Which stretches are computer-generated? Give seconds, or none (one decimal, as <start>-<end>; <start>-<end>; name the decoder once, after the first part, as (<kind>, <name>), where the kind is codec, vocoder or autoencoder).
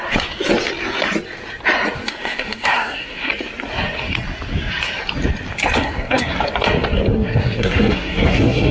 2.1-3.3 (codec, SNAC); 5.8-6.4; 7.1-8.7